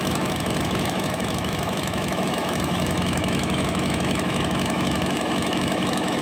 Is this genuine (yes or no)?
no